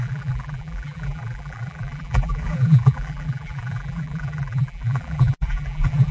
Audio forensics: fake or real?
fake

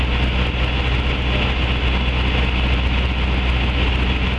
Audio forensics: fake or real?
real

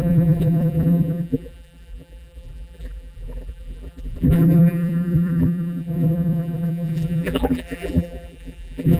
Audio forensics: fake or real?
fake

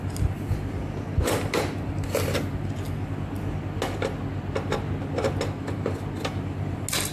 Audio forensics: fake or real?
real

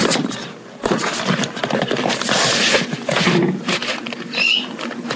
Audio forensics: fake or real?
real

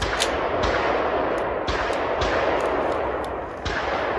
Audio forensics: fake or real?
real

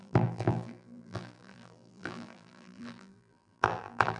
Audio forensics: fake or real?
fake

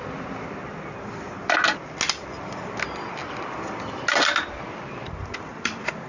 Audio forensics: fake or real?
real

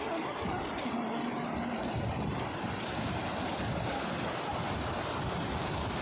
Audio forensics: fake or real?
real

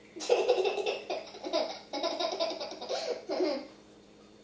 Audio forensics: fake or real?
fake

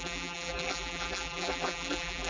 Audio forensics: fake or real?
fake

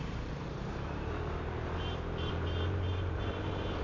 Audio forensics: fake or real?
fake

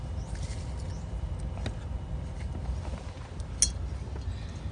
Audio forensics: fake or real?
real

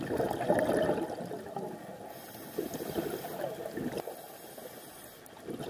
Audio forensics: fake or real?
real